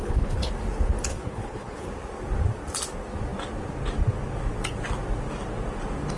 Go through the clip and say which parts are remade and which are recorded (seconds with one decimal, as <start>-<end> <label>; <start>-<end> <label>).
0.0-0.5 remade; 0.5-1.1 recorded; 1.1-1.9 remade; 1.9-6.2 recorded